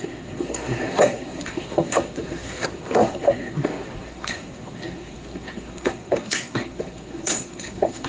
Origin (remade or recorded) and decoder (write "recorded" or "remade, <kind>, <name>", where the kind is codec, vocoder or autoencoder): remade, codec, SNAC